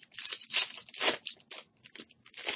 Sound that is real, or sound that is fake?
real